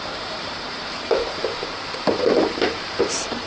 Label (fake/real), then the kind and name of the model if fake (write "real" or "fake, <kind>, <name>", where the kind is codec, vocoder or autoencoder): fake, vocoder, BigVGAN v2